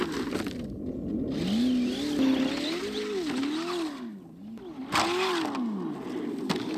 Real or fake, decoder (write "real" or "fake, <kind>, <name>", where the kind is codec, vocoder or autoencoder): real